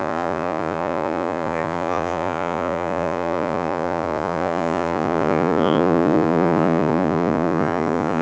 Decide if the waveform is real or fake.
fake